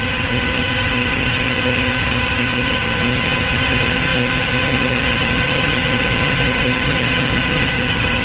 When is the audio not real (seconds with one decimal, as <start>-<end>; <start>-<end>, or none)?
0.0-8.2